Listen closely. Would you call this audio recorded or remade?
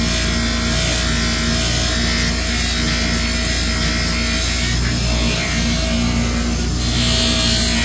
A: recorded